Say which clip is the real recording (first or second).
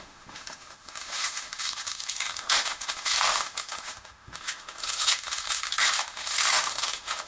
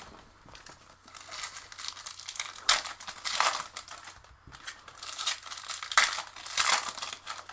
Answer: second